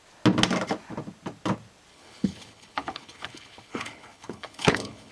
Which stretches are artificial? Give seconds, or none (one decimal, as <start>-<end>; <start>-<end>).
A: 1.9-5.1